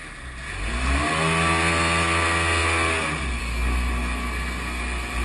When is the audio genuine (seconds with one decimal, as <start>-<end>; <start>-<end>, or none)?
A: 0.0-5.2